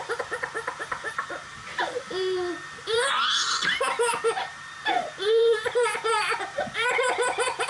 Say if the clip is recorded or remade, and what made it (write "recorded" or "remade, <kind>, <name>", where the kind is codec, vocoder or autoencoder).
remade, vocoder, BigVGAN v2